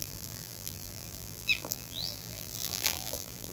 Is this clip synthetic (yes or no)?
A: yes